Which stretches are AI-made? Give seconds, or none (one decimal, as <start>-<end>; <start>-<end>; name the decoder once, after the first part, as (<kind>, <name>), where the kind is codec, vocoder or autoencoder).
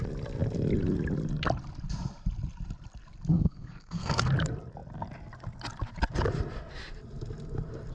3.3-4.3 (codec, SNAC)